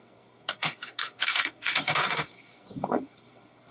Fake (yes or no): yes